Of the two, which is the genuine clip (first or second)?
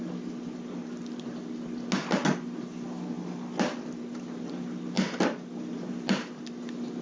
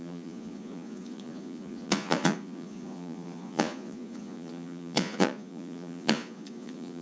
first